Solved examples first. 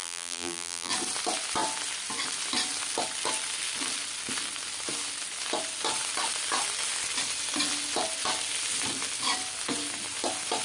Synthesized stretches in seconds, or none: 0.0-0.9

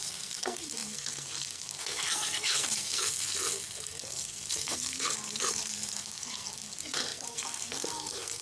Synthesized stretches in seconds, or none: 0.0-8.4

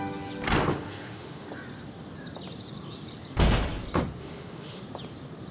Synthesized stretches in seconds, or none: 0.7-1.5; 4.2-4.8